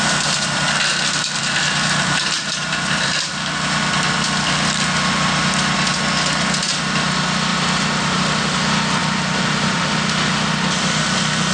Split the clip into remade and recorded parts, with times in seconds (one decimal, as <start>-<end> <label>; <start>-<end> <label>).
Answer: 0.0-1.4 recorded; 1.4-3.3 remade; 3.3-7.5 recorded; 7.5-8.4 remade; 8.4-9.0 recorded; 9.0-9.9 remade; 9.9-11.5 recorded